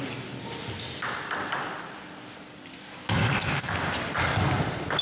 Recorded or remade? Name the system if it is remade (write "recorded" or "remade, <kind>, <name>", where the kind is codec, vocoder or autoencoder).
recorded